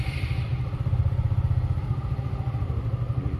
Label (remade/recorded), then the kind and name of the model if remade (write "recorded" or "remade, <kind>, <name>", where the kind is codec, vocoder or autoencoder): remade, vocoder, BigVGAN v2